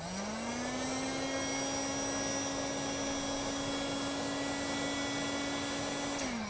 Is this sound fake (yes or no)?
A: no